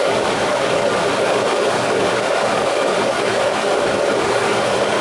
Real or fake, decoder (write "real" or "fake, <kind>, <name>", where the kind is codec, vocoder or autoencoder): fake, codec, DAC